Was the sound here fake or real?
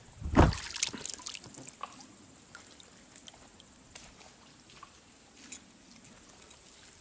real